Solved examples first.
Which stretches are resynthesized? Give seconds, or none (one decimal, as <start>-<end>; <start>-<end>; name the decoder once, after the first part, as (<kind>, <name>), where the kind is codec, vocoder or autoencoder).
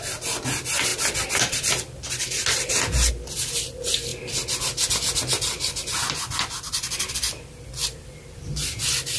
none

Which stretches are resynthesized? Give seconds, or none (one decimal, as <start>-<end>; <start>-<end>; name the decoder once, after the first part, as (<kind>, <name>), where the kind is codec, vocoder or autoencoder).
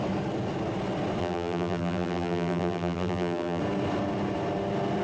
1.2-3.6 (vocoder, BigVGAN v2)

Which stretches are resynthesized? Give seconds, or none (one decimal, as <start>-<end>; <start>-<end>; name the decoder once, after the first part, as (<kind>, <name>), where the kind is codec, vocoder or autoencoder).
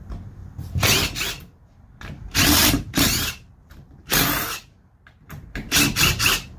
2.6-5.7 (vocoder, BigVGAN v2)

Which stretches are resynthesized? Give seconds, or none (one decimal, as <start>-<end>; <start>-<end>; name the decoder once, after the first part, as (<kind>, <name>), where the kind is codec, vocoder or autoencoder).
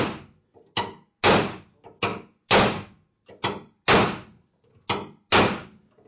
none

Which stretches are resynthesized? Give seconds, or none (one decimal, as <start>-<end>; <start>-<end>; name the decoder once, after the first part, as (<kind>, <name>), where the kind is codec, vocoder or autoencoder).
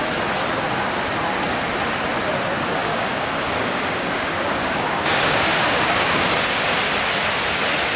2.8-6.3 (codec, DAC)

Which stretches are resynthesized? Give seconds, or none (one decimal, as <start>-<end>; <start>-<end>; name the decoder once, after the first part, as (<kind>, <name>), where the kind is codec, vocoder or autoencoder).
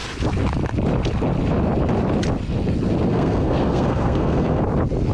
3.1-4.6 (codec, SNAC)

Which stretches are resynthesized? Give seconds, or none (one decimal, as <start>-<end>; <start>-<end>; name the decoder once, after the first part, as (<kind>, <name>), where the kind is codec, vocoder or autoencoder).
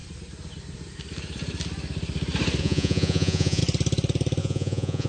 2.6-3.6 (vocoder, Vocos); 4.4-5.1